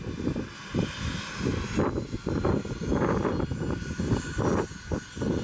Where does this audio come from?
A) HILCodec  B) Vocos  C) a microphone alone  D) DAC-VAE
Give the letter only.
C